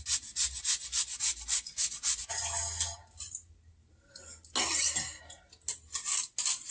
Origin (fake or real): real